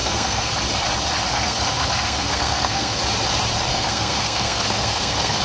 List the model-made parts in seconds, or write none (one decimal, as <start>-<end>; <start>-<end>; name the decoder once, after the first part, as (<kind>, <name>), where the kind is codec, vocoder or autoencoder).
0.0-0.5 (codec, SNAC); 1.3-3.0; 3.7-5.4